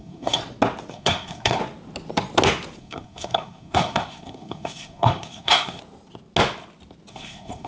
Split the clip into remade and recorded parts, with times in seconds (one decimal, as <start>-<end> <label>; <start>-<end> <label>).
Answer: 0.0-0.4 remade; 0.4-0.9 recorded; 0.9-1.6 remade; 1.6-2.8 recorded; 2.8-5.8 remade; 5.8-7.1 recorded; 7.1-7.7 remade